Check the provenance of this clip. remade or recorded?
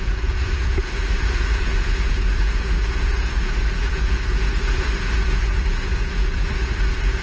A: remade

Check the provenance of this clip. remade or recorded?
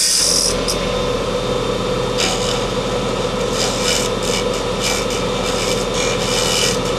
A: recorded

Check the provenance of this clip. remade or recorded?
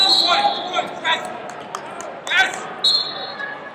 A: recorded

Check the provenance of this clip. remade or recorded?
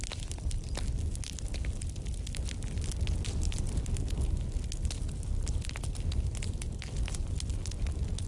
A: recorded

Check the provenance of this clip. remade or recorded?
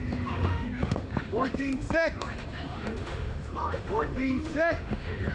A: remade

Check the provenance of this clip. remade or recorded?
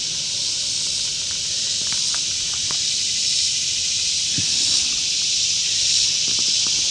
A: recorded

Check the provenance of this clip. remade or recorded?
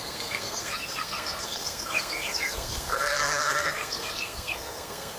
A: remade